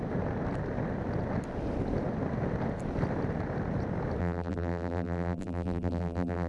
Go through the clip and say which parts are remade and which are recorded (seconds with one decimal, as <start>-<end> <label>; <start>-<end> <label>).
0.0-4.2 recorded; 4.2-6.5 remade